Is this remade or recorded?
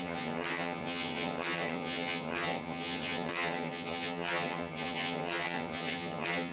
remade